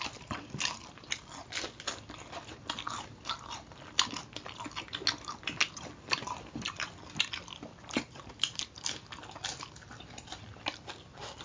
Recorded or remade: recorded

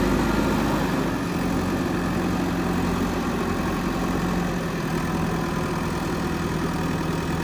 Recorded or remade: recorded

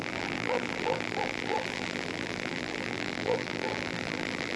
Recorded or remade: remade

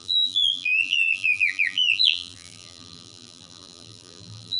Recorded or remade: remade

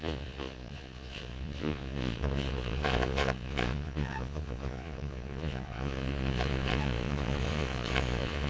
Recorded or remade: remade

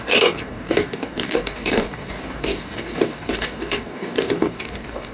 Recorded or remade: remade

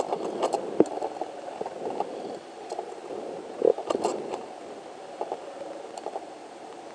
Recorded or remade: recorded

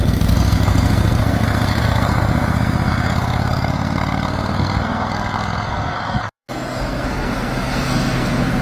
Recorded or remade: remade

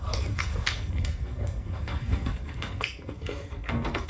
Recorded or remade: remade